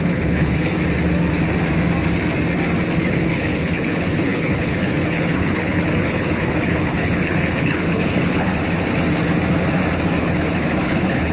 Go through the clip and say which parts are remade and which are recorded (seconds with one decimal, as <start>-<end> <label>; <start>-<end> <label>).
0.0-0.7 remade; 0.7-3.0 recorded; 3.0-8.5 remade; 8.5-10.2 recorded; 10.2-11.3 remade